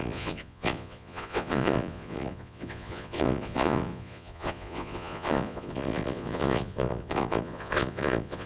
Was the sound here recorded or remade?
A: remade